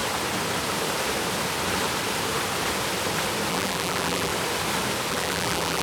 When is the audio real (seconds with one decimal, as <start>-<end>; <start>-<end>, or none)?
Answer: 0.0-3.5; 4.3-5.1